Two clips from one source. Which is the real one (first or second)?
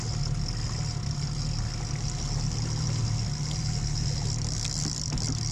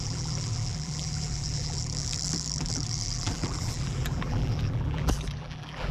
first